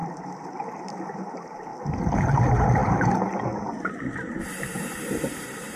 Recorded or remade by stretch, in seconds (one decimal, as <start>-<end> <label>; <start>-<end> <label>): 0.0-1.7 remade; 1.7-2.2 recorded; 2.2-5.8 remade